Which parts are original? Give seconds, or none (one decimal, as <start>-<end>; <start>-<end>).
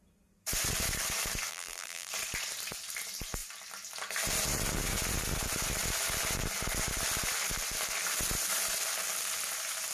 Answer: 0.0-1.5; 2.1-9.9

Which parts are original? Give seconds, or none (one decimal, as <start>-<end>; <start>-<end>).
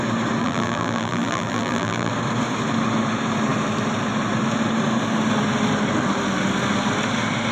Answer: 0.0-0.4; 2.1-7.5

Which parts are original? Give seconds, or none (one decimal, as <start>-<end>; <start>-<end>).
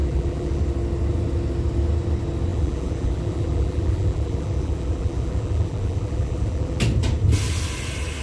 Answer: 0.6-2.5; 6.8-8.2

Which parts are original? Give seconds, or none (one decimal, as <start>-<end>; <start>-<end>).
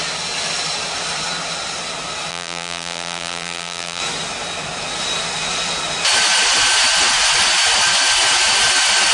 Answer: 0.0-2.3; 4.0-9.1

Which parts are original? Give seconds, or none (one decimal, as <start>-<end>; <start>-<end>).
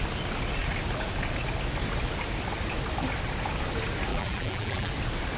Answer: 0.0-4.1; 4.9-5.4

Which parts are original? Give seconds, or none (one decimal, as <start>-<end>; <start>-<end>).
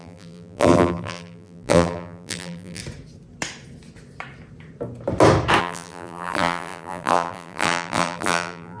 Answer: 2.8-5.6